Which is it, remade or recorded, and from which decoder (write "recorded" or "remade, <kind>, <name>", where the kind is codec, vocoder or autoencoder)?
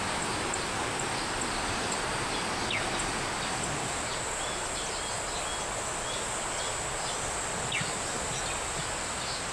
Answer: recorded